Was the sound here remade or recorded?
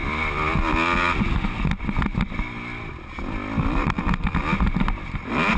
recorded